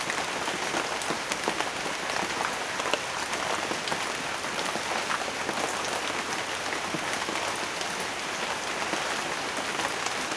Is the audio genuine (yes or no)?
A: yes